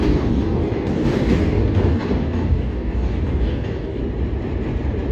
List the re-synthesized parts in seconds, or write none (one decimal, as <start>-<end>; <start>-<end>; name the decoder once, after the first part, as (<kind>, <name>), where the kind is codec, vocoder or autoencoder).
0.0-4.0 (codec, DAC)